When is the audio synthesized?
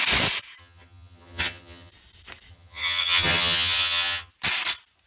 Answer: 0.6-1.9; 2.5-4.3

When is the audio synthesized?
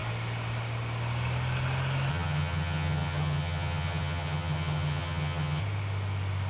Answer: 2.1-5.6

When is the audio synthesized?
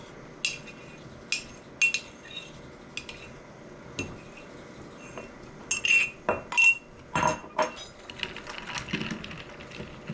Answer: none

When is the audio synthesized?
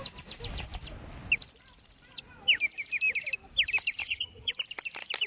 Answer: 4.0-4.5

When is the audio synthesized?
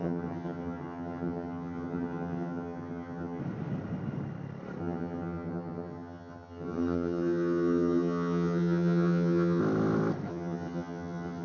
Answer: 0.0-3.4; 4.8-9.6; 10.3-11.4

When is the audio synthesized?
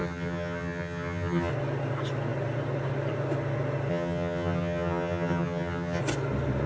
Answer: 0.0-1.5; 3.9-6.0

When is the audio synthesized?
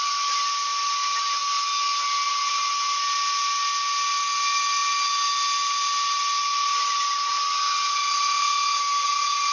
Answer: none